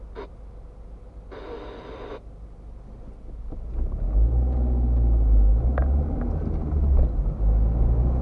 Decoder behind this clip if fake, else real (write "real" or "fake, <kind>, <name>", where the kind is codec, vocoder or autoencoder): real